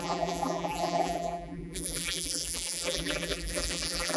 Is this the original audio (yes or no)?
no